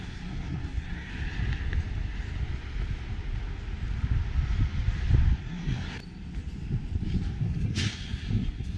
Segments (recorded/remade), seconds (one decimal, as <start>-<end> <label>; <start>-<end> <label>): 0.0-1.1 remade; 1.1-5.4 recorded; 5.4-6.0 remade; 6.0-7.4 recorded; 7.4-8.8 remade